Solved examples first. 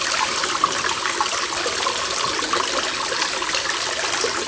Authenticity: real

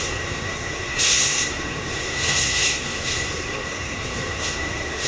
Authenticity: fake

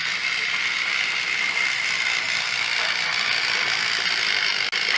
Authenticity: real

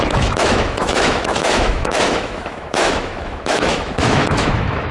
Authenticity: fake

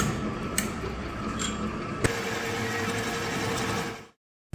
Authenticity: real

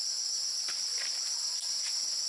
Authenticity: real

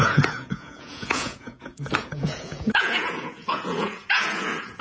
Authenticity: fake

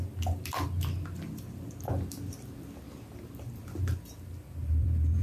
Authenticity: fake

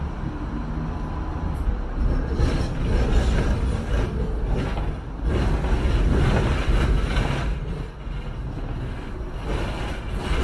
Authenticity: real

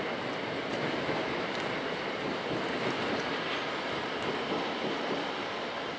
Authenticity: real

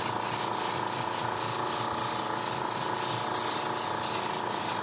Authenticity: real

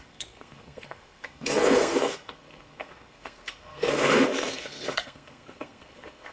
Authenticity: fake